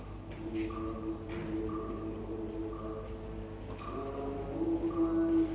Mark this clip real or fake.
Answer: real